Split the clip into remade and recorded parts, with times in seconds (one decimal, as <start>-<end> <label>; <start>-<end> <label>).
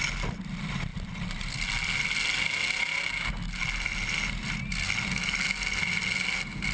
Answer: 0.0-6.7 recorded